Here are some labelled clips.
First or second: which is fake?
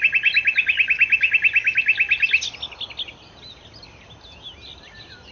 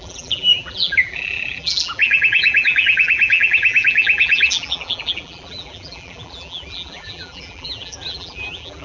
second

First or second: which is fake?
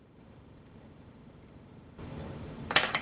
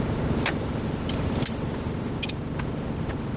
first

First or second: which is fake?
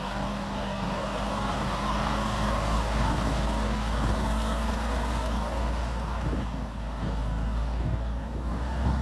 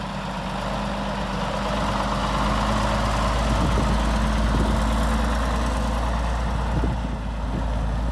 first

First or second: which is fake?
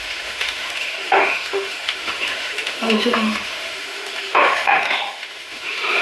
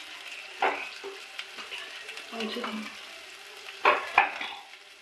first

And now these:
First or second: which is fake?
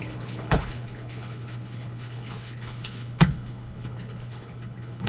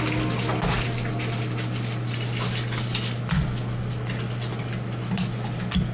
first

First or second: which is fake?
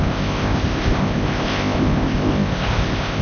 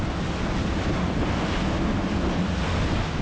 first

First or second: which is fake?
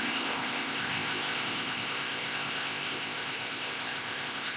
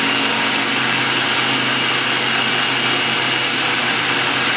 first